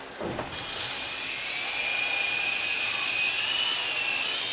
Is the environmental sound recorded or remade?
recorded